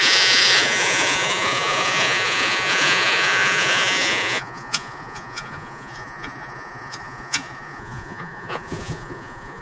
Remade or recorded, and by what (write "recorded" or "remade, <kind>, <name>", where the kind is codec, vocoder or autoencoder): remade, vocoder, Vocos